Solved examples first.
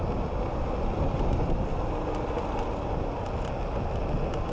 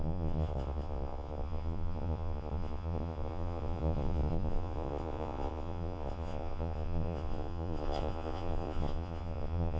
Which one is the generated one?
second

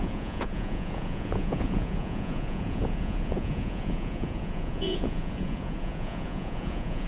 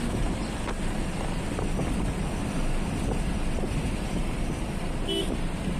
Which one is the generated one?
first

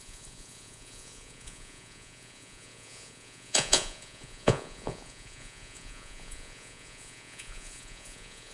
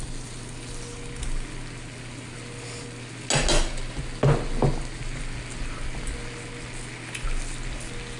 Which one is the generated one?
first